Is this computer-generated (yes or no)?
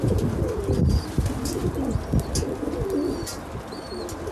no